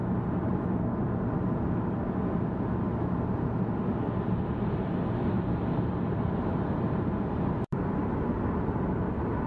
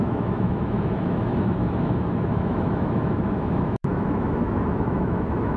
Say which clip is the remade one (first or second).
second